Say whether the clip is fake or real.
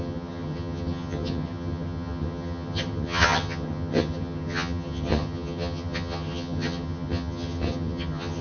fake